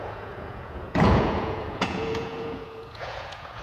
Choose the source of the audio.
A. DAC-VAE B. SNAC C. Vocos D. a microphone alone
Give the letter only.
C